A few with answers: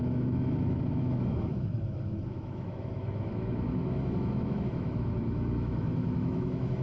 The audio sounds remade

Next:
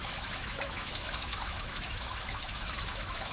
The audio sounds remade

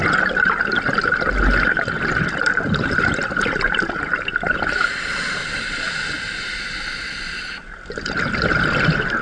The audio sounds recorded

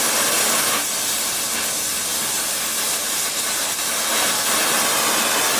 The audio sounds recorded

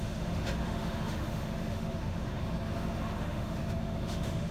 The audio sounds remade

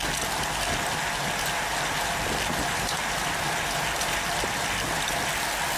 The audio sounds recorded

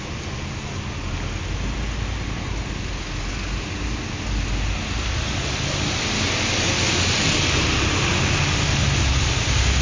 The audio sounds recorded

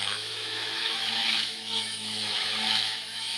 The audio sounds remade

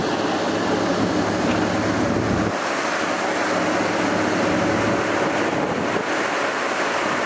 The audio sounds recorded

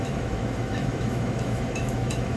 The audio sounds remade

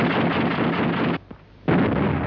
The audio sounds recorded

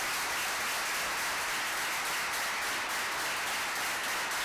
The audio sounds recorded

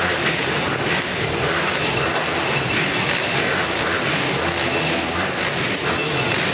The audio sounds recorded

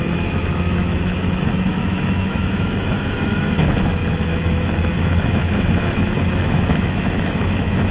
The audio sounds remade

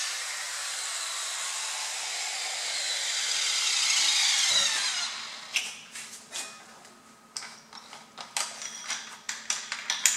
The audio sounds recorded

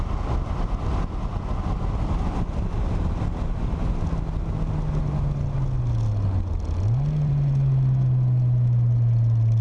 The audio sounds recorded